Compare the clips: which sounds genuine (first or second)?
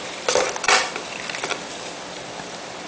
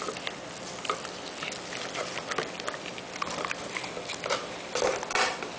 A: second